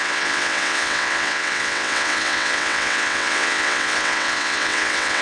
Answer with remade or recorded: remade